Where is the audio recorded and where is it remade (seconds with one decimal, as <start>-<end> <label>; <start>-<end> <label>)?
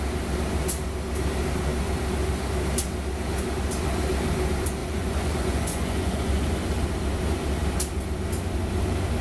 0.0-4.8 recorded; 4.8-6.5 remade; 6.5-9.2 recorded